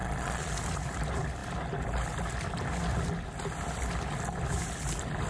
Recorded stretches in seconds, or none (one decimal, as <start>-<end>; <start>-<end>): 0.5-5.3